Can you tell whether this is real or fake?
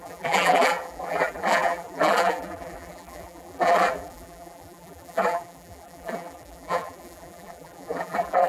fake